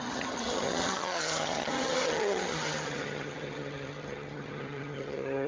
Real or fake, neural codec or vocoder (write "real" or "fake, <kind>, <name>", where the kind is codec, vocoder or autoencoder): fake, vocoder, HiFi-GAN